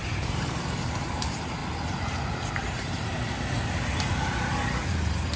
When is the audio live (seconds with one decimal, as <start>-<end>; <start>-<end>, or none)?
1.6-2.5; 3.1-4.9

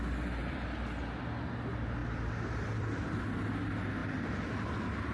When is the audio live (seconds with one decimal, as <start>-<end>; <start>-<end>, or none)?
0.0-0.4; 1.2-2.0; 3.2-5.1

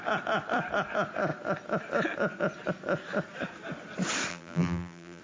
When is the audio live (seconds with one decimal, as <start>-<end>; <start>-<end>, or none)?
0.0-4.3

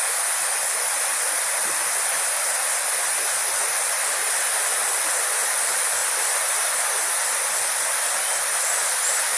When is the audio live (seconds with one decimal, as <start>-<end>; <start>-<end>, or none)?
0.0-4.2; 5.0-6.0; 7.0-9.4

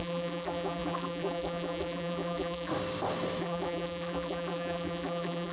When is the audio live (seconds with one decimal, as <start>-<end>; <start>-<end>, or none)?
2.7-3.4